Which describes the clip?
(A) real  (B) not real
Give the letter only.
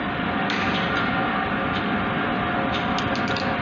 A